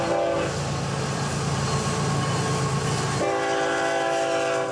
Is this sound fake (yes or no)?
no